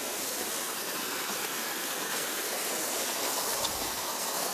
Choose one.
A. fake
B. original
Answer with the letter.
A